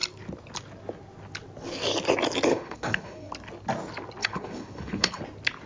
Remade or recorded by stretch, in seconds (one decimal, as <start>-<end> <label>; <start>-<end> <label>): 0.0-2.5 recorded; 2.5-3.3 remade; 3.3-4.2 recorded; 4.2-5.2 remade; 5.2-5.7 recorded

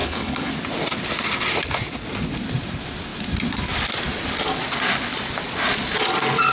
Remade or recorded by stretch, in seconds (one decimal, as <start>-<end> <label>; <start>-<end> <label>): 0.0-0.5 remade; 0.5-6.5 recorded

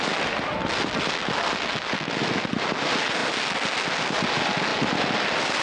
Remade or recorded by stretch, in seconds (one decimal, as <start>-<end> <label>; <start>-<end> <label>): 0.0-5.6 recorded

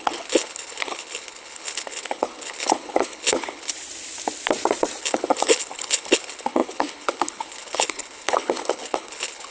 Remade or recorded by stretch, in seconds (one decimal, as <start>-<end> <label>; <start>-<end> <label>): 0.0-3.7 remade; 3.7-5.0 recorded; 5.0-9.5 remade

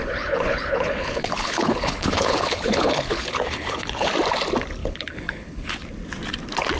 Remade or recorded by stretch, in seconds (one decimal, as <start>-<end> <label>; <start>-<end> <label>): 0.0-4.1 remade; 4.1-4.8 recorded; 4.8-5.7 remade; 5.7-6.8 recorded

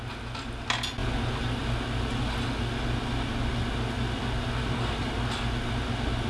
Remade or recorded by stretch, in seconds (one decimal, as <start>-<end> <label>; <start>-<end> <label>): 0.0-6.3 recorded